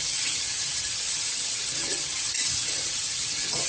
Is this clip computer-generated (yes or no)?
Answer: yes